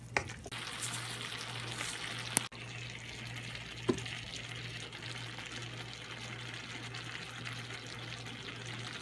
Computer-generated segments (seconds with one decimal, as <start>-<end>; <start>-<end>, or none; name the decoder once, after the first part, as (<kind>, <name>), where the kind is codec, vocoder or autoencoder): none